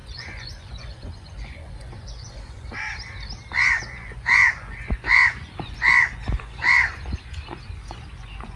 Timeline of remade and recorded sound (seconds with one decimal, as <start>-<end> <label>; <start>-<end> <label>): 0.0-2.9 remade; 2.9-3.8 recorded; 3.8-8.6 remade